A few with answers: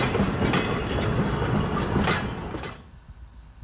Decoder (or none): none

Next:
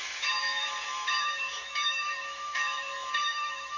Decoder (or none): autoencoder, DAC-VAE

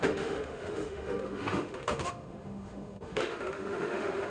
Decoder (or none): autoencoder, DAC-VAE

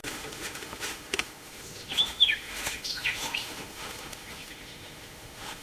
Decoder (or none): autoencoder, DAC-VAE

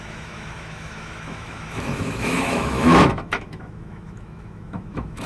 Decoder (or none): autoencoder, DAC-VAE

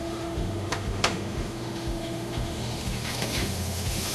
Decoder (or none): autoencoder, DAC-VAE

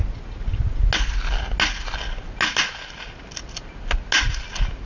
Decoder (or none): none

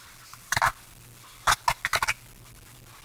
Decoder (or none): none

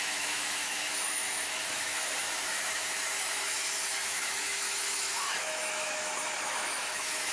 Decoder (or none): autoencoder, DAC-VAE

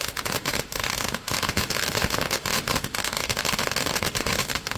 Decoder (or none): autoencoder, DAC-VAE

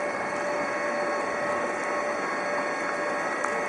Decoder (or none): none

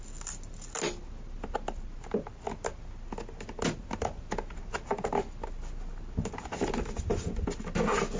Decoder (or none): none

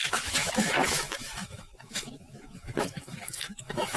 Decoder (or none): autoencoder, DAC-VAE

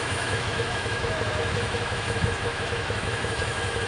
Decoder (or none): autoencoder, DAC-VAE